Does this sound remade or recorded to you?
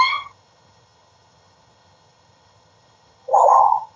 remade